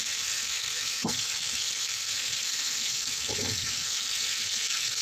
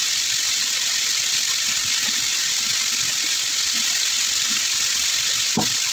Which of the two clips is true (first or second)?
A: second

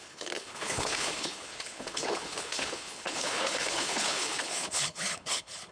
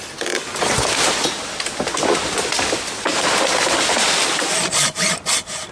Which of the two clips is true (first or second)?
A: second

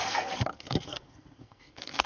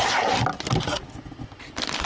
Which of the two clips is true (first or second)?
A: second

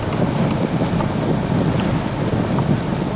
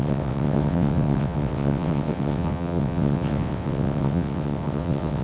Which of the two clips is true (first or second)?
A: first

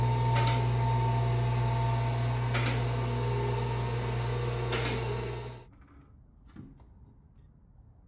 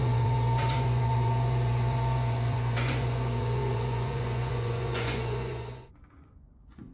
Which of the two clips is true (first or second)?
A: first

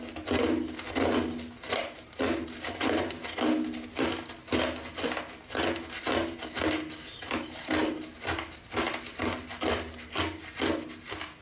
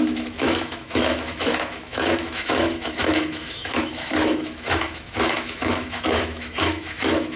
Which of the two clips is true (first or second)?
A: first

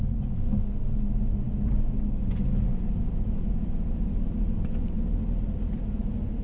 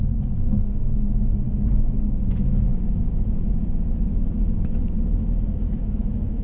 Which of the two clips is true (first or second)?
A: first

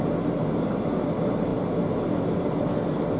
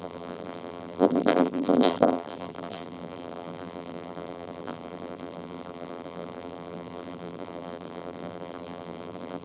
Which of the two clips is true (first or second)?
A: first